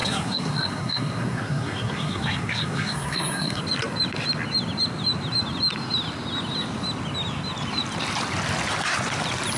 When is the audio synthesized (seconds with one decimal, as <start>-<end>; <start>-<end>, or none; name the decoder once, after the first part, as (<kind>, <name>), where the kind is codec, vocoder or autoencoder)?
0.0-3.6 (codec, SNAC)